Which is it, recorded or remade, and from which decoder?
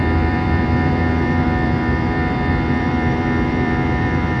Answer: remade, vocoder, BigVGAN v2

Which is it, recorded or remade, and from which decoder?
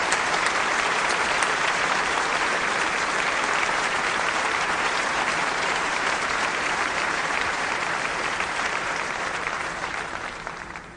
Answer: remade, vocoder, BigVGAN v2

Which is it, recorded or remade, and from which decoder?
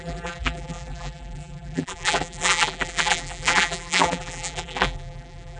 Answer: remade, vocoder, BigVGAN v2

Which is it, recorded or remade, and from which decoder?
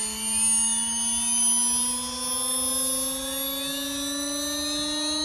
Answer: recorded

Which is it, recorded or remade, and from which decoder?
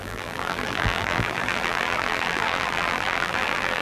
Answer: remade, vocoder, BigVGAN v2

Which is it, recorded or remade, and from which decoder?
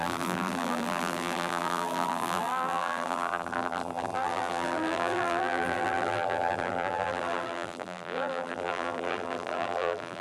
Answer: remade, vocoder, BigVGAN v2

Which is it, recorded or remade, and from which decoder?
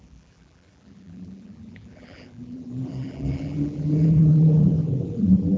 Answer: remade, vocoder, BigVGAN v2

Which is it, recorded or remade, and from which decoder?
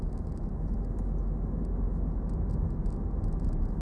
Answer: recorded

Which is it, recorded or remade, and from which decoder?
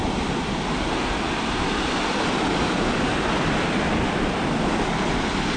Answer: recorded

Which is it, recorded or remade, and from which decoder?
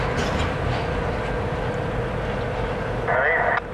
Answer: recorded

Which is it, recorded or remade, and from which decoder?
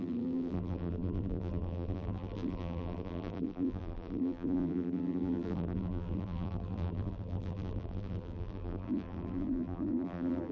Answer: remade, vocoder, BigVGAN v2